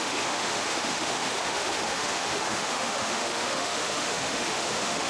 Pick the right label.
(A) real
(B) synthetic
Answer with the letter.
B